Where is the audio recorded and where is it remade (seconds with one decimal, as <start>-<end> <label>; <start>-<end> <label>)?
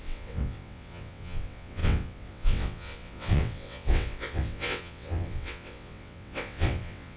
0.0-7.2 remade